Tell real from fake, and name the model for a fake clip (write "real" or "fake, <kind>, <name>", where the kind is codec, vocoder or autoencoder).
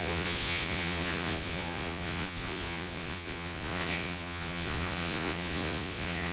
fake, vocoder, Vocos